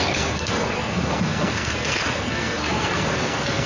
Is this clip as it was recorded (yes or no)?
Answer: no